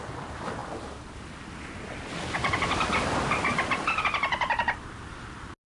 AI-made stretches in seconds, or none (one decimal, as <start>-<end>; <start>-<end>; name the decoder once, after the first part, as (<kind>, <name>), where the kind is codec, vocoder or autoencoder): none